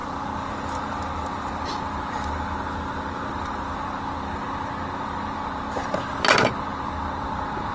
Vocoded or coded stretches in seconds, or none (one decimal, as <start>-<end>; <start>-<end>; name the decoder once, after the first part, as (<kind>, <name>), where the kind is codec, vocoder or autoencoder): none